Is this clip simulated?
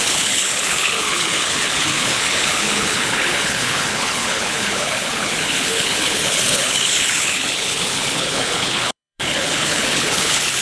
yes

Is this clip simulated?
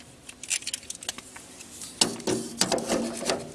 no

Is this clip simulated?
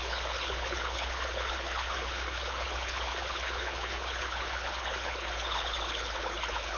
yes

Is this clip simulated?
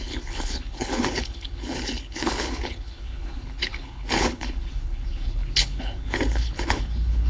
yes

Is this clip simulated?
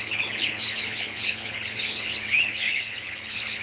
yes